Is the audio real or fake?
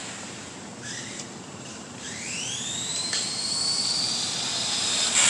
fake